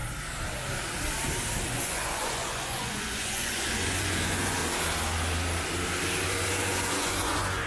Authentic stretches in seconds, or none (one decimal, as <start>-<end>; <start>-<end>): 0.0-1.7; 4.6-6.6